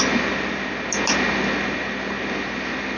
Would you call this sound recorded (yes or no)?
yes